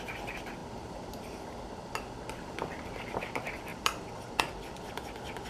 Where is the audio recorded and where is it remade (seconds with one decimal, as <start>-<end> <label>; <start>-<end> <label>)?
0.0-0.6 recorded; 0.6-1.4 remade; 1.4-3.7 recorded; 3.7-4.4 remade; 4.4-5.5 recorded